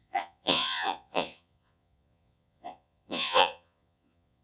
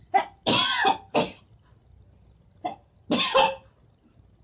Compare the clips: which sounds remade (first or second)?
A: first